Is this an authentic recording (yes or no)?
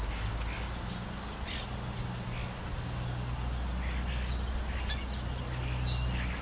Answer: yes